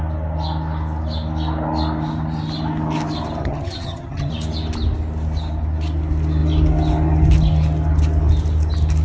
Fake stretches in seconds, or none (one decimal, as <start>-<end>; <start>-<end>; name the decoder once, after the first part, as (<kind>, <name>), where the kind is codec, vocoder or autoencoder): 3.4-4.3 (vocoder, HiFi-GAN)